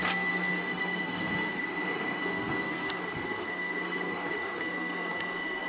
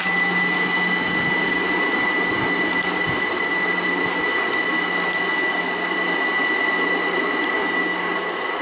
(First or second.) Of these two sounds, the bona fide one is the second